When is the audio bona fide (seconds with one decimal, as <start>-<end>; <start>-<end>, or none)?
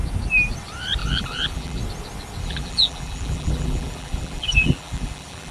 0.0-1.0; 1.8-2.4